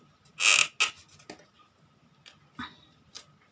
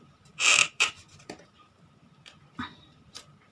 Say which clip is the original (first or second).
first